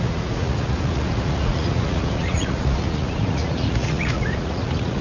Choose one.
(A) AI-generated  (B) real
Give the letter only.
A